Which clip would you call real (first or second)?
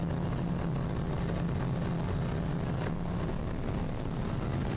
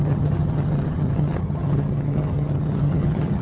first